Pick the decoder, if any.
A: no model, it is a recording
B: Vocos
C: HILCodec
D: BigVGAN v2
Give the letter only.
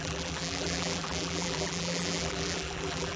D